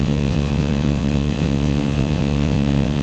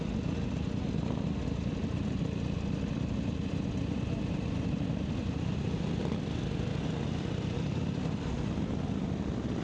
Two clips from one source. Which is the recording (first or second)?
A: second